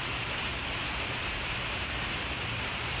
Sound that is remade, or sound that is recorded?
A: remade